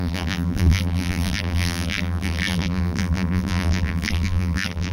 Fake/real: fake